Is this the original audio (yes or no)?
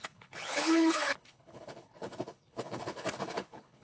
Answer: no